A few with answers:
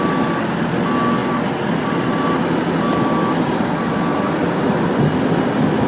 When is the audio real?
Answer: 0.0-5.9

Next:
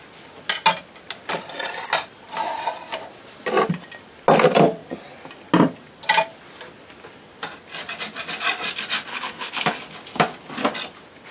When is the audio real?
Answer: 0.0-9.1; 9.8-11.3